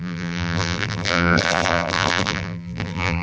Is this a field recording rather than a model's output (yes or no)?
no